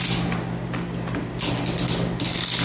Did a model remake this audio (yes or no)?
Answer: no